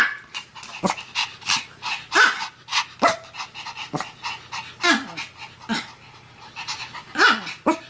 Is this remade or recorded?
recorded